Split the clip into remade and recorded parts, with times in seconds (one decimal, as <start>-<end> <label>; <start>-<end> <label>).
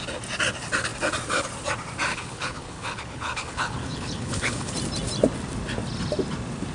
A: 0.0-2.1 recorded; 2.1-4.7 remade; 4.7-6.7 recorded